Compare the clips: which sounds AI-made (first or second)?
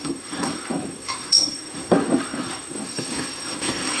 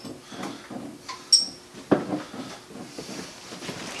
first